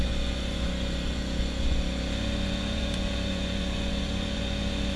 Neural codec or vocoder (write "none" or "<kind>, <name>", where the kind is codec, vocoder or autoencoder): vocoder, Vocos